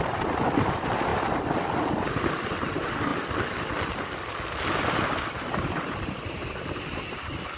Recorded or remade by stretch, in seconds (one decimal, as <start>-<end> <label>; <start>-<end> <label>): 0.0-1.1 remade; 1.1-2.7 recorded; 2.7-3.1 remade; 3.1-4.8 recorded; 4.8-7.6 remade